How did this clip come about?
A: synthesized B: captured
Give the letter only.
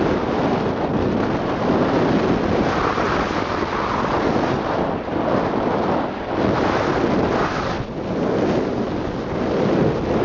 B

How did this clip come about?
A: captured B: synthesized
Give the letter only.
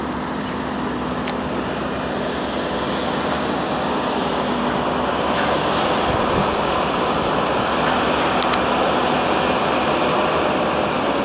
A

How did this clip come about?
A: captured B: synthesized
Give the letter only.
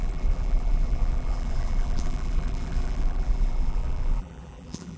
B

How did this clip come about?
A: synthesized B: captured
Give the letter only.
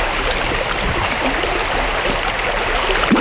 B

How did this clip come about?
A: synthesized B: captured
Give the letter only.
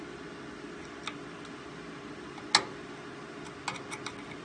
B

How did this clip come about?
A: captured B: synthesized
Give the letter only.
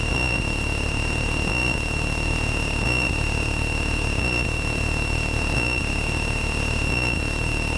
A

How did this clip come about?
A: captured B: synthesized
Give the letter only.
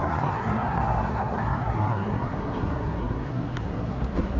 B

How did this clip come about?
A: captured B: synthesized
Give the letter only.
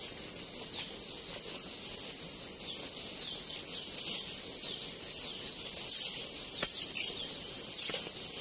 A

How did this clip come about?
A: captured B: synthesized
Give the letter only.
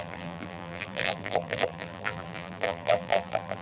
B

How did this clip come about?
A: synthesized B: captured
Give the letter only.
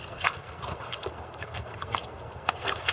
A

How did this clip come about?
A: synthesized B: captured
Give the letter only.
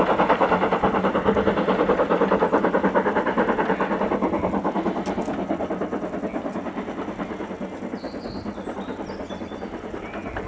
B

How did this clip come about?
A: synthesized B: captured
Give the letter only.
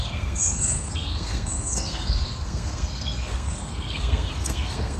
A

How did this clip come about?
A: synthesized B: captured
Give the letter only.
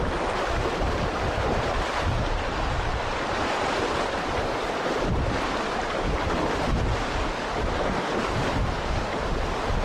B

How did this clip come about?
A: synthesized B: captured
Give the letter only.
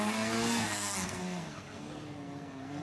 A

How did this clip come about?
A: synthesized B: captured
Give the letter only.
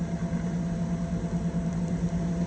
B